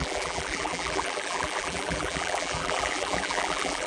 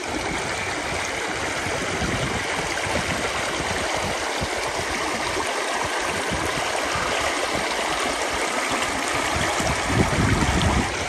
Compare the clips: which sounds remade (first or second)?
first